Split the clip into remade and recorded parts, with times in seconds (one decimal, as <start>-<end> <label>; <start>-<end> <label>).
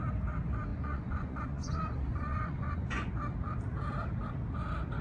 0.0-0.7 recorded; 0.7-3.1 remade; 3.1-5.0 recorded